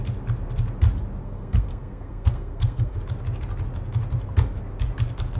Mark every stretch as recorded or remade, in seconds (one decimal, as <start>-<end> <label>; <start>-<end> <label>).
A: 0.0-1.2 recorded; 1.2-3.0 remade; 3.0-5.4 recorded